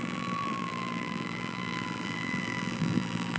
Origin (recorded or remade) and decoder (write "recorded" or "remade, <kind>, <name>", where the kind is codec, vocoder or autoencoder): remade, vocoder, BigVGAN v2